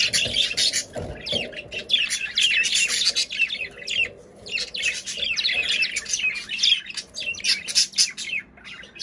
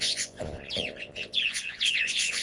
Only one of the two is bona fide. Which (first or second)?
first